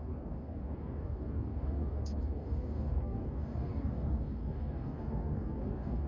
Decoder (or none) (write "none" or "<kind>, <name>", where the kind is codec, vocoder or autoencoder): codec, DAC